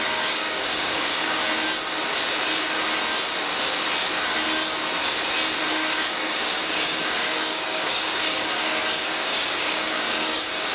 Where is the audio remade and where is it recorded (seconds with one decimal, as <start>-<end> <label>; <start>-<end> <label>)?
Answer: 0.0-1.4 remade; 1.4-5.7 recorded; 5.7-10.7 remade